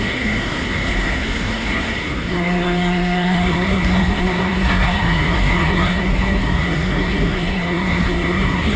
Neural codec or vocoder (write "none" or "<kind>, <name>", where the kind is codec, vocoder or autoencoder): codec, SNAC